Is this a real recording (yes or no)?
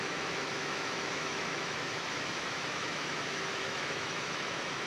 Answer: no